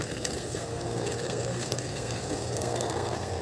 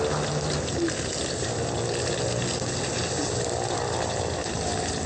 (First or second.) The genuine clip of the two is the second